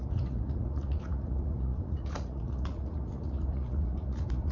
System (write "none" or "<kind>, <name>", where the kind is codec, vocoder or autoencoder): vocoder, Vocos